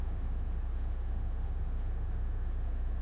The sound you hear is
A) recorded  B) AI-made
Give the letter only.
B